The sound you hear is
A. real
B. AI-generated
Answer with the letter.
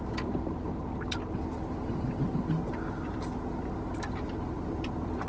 A